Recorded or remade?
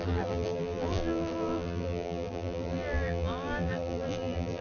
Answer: remade